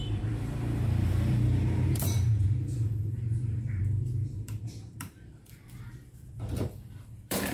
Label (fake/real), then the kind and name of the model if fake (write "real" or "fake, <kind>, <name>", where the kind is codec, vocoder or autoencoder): fake, vocoder, BigVGAN v2